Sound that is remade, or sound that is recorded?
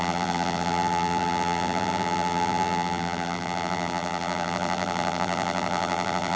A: remade